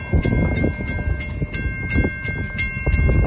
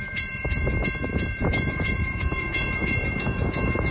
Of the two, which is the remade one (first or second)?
second